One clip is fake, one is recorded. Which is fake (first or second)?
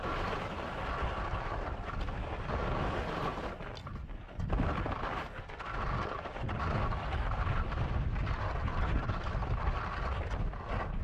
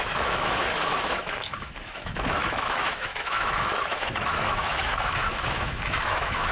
second